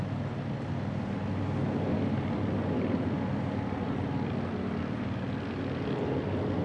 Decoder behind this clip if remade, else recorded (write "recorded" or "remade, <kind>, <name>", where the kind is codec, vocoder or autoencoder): recorded